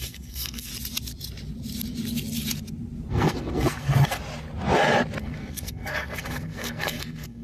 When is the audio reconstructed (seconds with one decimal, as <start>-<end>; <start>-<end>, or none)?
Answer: 0.0-0.7; 3.1-4.2; 5.2-7.4